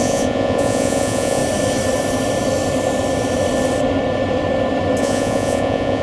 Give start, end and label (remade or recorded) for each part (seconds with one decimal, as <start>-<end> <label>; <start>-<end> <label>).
0.0-1.4 remade; 1.4-5.0 recorded; 5.0-6.0 remade